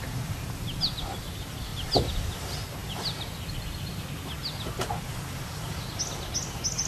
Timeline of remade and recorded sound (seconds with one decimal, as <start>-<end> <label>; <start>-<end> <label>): 0.0-6.9 recorded

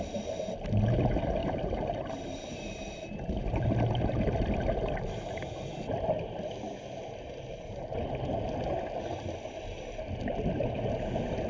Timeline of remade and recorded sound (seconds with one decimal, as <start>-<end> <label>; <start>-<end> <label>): 0.0-1.4 recorded; 1.4-4.3 remade; 4.3-11.5 recorded

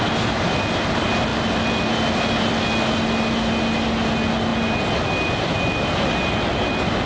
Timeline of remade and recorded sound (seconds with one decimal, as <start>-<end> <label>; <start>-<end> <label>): 0.0-7.1 recorded

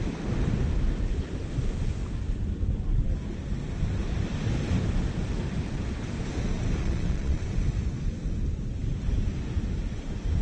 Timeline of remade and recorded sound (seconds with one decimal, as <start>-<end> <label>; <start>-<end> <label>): 0.0-6.8 recorded; 6.8-7.4 remade; 7.4-10.4 recorded

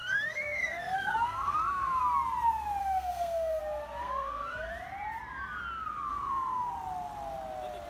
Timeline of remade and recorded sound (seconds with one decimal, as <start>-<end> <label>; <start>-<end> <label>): 0.0-2.0 remade; 2.0-2.8 recorded; 2.8-3.6 remade; 3.6-4.0 recorded; 4.0-4.7 remade; 4.7-6.1 recorded; 6.1-6.7 remade; 6.7-7.9 recorded